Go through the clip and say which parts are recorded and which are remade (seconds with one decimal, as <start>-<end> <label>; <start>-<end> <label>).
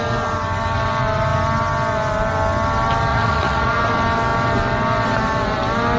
0.0-3.1 recorded; 3.1-3.8 remade; 3.8-6.0 recorded